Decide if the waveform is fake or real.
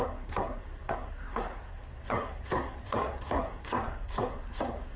fake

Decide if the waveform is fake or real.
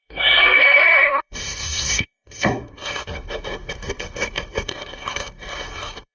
fake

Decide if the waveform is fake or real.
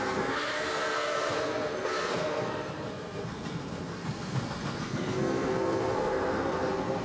fake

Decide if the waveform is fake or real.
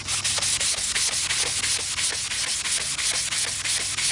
real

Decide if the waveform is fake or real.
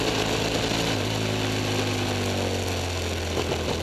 real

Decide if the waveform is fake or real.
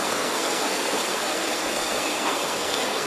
fake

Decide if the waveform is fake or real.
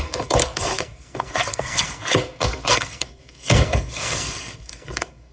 fake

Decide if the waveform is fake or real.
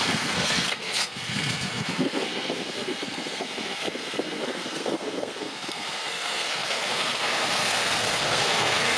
fake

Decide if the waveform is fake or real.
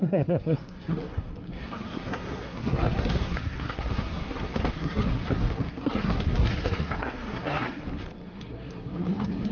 fake